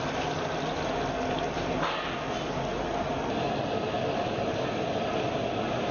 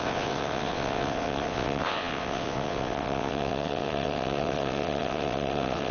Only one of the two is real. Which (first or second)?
first